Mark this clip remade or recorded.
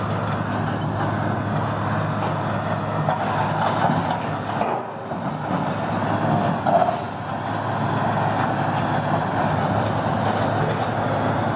recorded